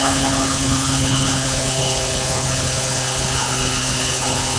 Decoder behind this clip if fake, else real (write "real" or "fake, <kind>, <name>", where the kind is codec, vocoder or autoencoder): fake, codec, HILCodec